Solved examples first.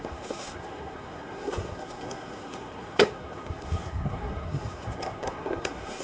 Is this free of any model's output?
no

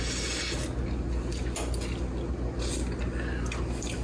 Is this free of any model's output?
yes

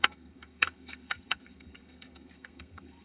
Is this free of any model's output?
no